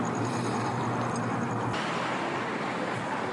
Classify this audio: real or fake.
real